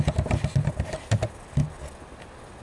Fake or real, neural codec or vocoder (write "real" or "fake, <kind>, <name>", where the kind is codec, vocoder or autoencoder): real